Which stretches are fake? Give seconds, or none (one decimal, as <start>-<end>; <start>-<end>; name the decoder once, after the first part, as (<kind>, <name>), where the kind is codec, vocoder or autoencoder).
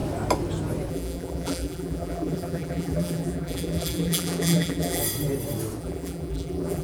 0.9-5.0 (vocoder, BigVGAN v2); 5.8-6.8